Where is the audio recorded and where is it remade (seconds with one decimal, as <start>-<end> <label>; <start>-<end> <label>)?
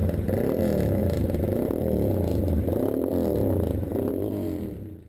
0.0-5.1 recorded